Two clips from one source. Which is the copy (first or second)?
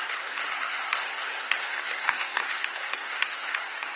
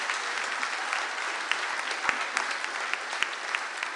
first